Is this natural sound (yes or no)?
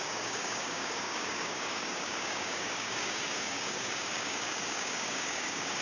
no